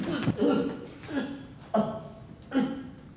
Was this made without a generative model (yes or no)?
yes